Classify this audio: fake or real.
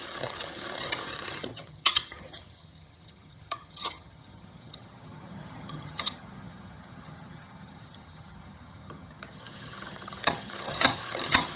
fake